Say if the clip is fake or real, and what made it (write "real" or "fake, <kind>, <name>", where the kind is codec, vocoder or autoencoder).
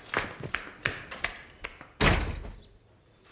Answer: real